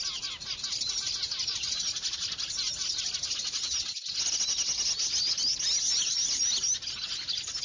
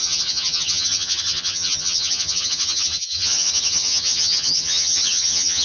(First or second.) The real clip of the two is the first